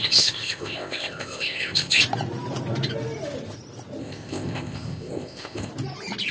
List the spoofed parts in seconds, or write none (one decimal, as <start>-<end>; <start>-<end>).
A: 0.0-2.0; 4.0-5.7